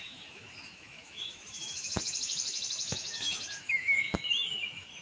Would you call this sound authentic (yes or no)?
no